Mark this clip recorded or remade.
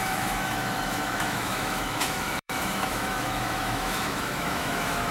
remade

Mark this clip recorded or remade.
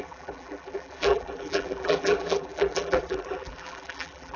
remade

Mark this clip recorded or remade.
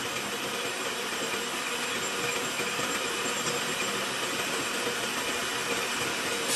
recorded